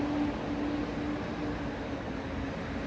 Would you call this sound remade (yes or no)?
no